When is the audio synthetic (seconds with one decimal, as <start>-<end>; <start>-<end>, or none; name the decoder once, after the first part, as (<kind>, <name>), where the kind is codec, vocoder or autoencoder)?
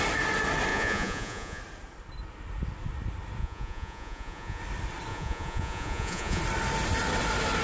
0.7-1.6 (vocoder, Vocos); 3.4-4.6; 5.1-6.4